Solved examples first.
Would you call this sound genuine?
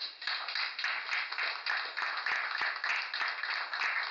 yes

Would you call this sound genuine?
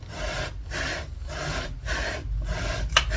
yes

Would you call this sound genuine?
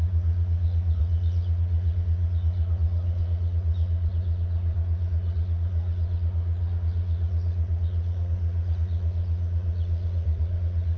no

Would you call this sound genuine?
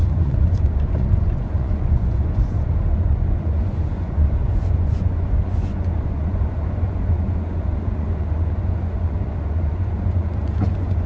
no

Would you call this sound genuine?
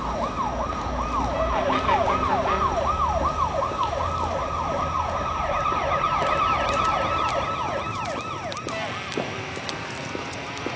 yes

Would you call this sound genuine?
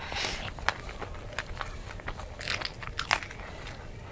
yes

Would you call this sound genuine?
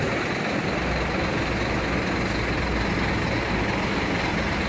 yes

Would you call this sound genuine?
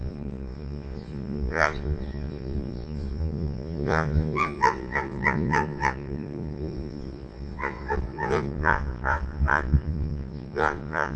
no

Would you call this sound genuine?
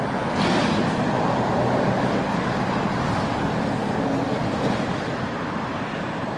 yes